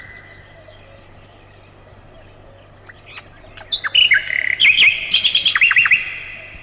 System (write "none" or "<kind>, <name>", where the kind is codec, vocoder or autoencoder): none